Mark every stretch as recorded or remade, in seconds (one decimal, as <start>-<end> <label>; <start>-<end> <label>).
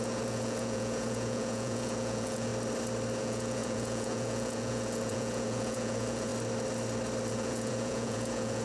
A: 0.0-2.5 remade; 2.5-3.2 recorded; 3.2-6.3 remade; 6.3-7.3 recorded; 7.3-8.6 remade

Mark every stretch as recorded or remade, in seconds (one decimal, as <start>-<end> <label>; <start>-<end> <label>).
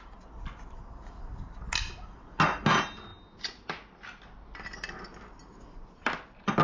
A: 0.0-6.6 recorded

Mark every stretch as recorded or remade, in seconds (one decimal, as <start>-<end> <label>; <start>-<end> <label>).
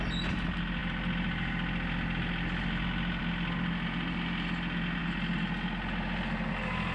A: 0.0-6.9 recorded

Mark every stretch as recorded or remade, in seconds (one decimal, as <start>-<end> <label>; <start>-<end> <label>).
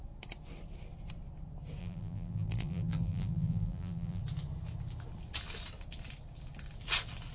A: 0.0-1.8 recorded; 1.8-4.2 remade; 4.2-7.3 recorded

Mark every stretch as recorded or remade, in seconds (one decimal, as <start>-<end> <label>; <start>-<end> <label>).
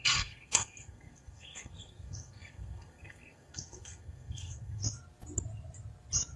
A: 0.0-4.8 remade; 4.8-6.4 recorded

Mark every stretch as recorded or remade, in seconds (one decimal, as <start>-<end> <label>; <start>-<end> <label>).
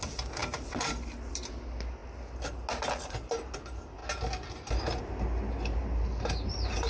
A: 0.0-6.9 recorded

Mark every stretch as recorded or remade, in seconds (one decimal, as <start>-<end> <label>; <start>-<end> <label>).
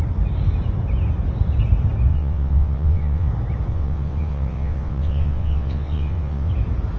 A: 0.0-2.1 recorded; 2.1-3.3 remade; 3.3-3.7 recorded; 3.7-6.5 remade; 6.5-7.0 recorded